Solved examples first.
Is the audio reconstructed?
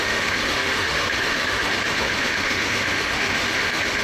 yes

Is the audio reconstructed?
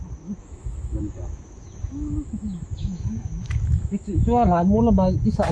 yes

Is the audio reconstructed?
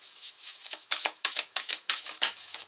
yes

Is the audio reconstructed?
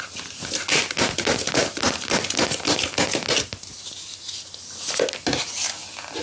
no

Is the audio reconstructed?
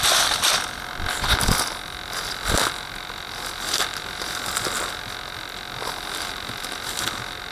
no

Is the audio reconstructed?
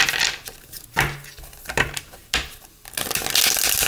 no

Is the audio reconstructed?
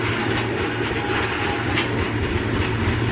no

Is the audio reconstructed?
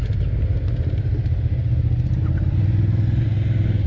no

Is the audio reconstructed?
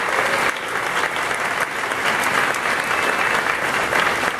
no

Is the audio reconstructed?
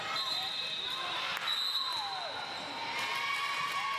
no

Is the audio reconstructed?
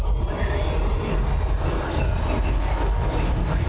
no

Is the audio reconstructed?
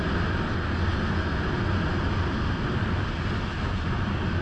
no